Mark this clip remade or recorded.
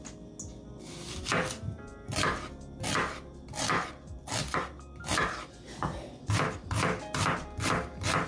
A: recorded